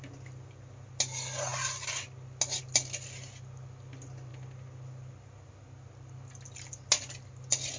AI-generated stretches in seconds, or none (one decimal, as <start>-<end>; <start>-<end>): none